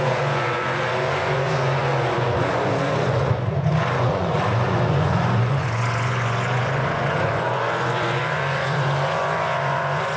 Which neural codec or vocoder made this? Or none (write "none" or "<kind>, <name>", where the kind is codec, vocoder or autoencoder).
vocoder, Vocos